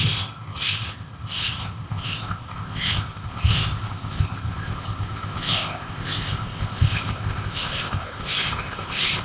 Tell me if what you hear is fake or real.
fake